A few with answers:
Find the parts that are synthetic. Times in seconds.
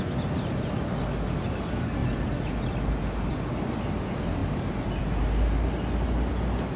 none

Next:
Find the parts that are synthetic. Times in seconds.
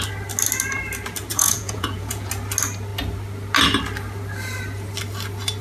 1.3-2.3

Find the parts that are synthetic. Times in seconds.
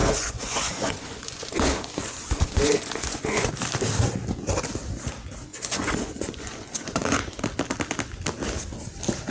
0.0-3.5; 5.5-7.2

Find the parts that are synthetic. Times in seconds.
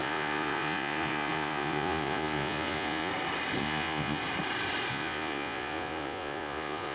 0.0-3.1; 3.6-4.2; 4.9-6.9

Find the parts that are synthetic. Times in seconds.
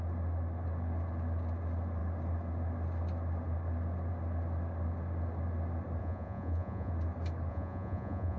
6.0-6.9; 7.5-8.4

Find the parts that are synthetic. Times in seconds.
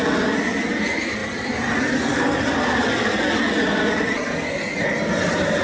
none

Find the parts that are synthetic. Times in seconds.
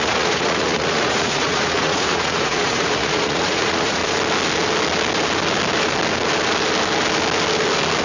0.0-4.0